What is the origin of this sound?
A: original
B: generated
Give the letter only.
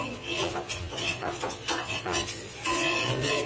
B